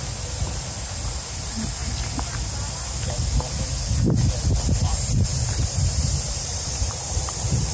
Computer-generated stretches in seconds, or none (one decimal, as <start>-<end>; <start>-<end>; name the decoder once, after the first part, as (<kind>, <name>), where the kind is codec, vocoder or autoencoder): 5.3-7.3 (vocoder, BigVGAN v2)